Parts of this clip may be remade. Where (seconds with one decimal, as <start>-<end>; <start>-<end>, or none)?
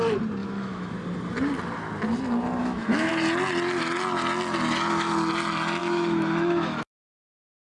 0.4-0.9; 2.6-3.1; 5.8-7.6